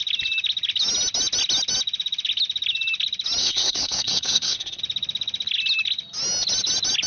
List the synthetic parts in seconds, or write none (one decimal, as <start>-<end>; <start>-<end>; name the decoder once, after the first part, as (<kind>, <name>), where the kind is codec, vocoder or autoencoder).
3.4-4.8 (codec, SNAC)